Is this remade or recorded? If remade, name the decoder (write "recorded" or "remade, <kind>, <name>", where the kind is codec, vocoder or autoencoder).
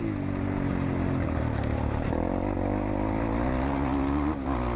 recorded